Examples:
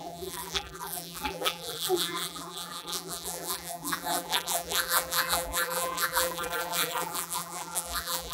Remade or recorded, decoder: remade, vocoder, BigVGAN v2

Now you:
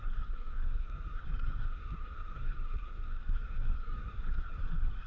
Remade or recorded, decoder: remade, codec, SNAC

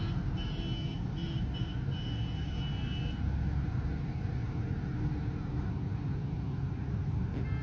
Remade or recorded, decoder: recorded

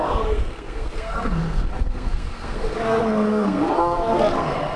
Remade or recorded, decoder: remade, codec, SNAC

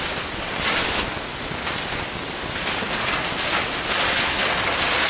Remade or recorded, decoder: recorded